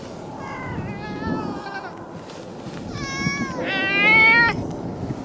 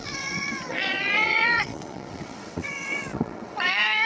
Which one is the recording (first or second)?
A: first